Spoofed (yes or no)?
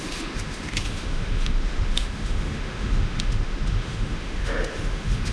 yes